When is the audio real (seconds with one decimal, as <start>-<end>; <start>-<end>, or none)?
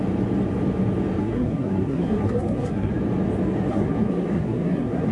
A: 0.0-1.2; 2.9-3.7